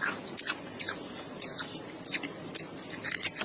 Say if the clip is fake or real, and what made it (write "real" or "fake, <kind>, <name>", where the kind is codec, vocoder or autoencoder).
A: real